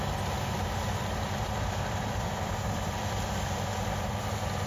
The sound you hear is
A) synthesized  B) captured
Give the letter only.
B